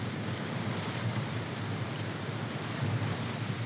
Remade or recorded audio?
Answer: recorded